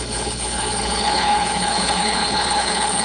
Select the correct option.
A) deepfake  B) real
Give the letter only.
A